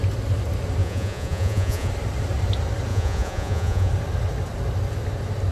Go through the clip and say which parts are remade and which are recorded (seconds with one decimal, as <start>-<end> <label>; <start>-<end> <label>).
0.0-0.8 recorded; 0.8-1.9 remade; 1.9-2.9 recorded; 2.9-3.9 remade; 3.9-5.5 recorded